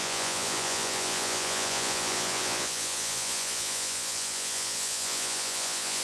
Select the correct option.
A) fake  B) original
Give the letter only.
A